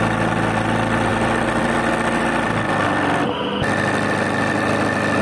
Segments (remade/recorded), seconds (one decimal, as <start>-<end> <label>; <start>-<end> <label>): 0.0-5.2 recorded